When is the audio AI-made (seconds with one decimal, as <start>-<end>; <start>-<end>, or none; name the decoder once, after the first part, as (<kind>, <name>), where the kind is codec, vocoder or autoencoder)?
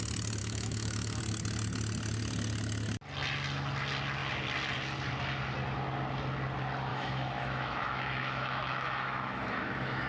0.4-1.2 (autoencoder, DAC-VAE); 6.9-10.1